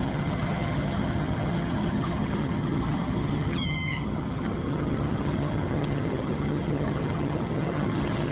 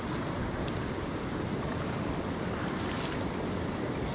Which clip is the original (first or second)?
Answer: second